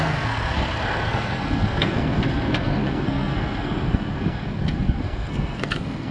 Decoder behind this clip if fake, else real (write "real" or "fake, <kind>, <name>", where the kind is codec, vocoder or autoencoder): fake, codec, SNAC